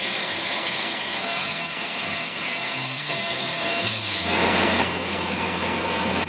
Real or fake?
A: fake